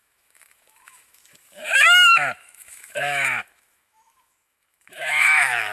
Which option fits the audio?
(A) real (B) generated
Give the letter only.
B